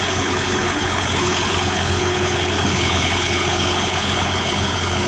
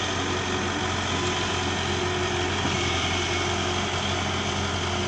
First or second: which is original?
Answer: second